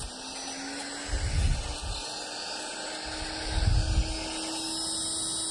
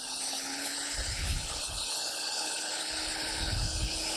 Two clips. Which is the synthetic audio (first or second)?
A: second